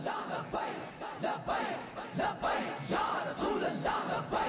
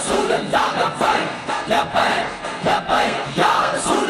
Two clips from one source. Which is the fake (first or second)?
second